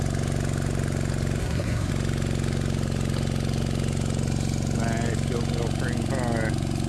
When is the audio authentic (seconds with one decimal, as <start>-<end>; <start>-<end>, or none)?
0.0-1.4; 1.9-6.9